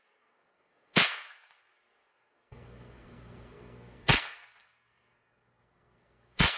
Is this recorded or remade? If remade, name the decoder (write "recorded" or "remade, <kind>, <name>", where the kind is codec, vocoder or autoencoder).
remade, codec, SNAC